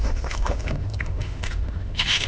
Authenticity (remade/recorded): remade